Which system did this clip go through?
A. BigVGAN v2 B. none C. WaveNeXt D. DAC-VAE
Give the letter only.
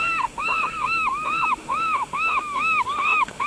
D